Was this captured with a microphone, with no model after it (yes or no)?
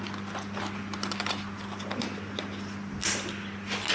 yes